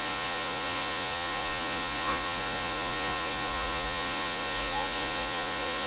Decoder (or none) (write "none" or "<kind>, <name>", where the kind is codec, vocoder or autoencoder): vocoder, Vocos